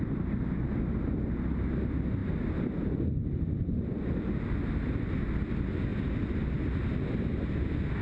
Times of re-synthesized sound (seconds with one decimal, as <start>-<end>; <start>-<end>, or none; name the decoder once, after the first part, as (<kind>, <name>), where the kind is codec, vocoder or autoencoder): none